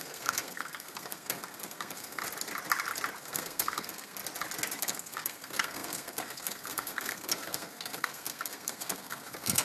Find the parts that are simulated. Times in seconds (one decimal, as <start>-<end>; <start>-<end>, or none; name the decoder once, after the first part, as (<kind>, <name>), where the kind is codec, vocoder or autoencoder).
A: 0.0-2.2 (codec, SNAC); 3.2-4.2; 4.8-9.6